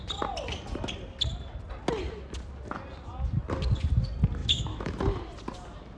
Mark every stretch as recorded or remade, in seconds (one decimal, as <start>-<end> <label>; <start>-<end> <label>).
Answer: 0.0-4.4 recorded; 4.4-5.0 remade; 5.0-6.0 recorded